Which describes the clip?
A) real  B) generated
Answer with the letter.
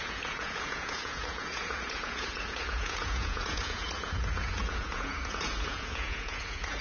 B